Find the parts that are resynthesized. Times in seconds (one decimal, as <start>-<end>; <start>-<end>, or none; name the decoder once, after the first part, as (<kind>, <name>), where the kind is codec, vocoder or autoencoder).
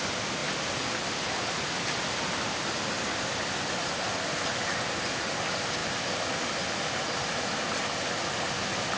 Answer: none